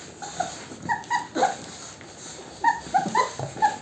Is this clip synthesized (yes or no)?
no